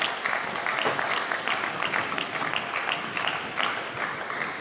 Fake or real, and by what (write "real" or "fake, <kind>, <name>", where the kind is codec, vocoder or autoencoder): real